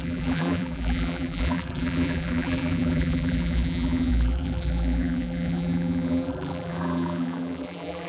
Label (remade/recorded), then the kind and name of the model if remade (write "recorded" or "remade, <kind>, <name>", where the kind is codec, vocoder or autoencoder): remade, vocoder, BigVGAN v2